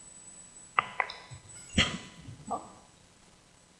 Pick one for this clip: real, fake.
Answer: real